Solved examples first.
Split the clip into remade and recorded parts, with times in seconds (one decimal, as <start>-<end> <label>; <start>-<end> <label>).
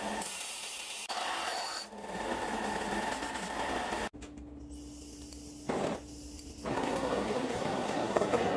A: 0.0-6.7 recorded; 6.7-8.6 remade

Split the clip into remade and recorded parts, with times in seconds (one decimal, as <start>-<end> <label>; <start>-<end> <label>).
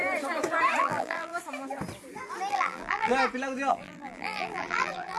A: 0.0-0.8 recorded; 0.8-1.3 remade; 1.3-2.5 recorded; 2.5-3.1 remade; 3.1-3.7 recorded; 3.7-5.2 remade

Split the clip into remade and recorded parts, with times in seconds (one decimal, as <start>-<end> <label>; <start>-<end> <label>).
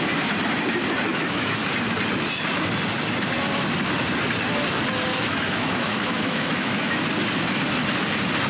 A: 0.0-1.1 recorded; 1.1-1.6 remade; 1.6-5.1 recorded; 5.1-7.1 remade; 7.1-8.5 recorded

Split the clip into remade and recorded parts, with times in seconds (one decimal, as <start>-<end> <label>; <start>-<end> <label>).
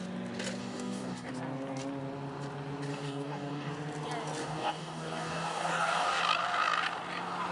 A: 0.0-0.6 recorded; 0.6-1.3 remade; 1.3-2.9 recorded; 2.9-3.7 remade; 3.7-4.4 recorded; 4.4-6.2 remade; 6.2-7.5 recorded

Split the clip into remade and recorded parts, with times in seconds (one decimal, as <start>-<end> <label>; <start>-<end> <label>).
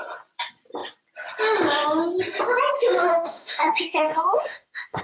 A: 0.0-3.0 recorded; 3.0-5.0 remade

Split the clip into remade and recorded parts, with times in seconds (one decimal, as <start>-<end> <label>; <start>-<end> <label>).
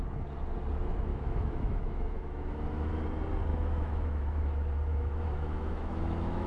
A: 0.0-1.1 recorded; 1.1-2.9 remade; 2.9-3.5 recorded; 3.5-4.5 remade; 4.5-4.9 recorded; 4.9-6.5 remade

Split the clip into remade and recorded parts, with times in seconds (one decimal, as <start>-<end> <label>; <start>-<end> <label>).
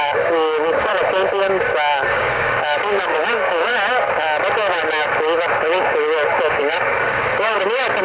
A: 0.0-0.9 remade; 0.9-2.1 recorded; 2.1-3.7 remade; 3.7-6.5 recorded; 6.5-8.0 remade